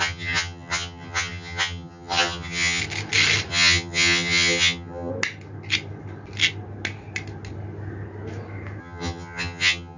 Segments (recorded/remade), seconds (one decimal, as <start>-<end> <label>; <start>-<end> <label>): 0.0-2.8 remade; 2.8-3.5 recorded; 3.5-5.1 remade; 5.1-8.8 recorded; 8.8-10.0 remade